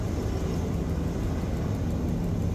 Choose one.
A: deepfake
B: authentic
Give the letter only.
B